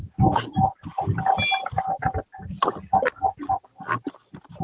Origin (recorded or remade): recorded